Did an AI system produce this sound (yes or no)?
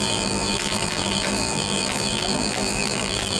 yes